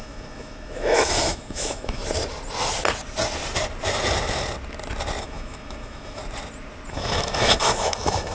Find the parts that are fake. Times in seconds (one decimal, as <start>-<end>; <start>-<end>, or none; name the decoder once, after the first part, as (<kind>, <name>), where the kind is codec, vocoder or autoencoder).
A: 0.0-2.0 (autoencoder, DAC-VAE); 5.2-6.2; 6.9-8.3